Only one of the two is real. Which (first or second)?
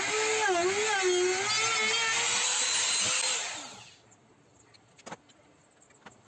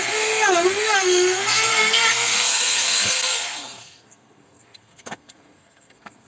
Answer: first